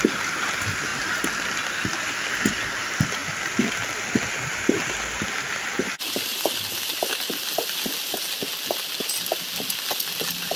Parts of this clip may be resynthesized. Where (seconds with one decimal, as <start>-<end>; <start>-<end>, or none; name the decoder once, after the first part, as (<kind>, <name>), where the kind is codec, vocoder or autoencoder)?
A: none